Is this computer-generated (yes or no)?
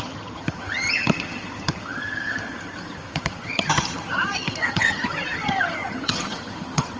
yes